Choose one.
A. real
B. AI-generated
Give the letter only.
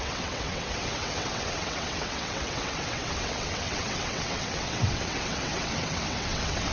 B